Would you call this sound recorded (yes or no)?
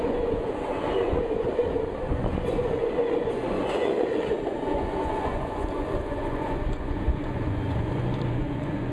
no